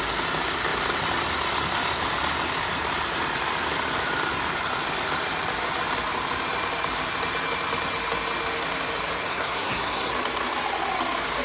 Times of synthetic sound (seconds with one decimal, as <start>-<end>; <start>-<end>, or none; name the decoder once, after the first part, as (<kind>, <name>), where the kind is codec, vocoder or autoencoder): 9.3-10.1 (codec, SNAC)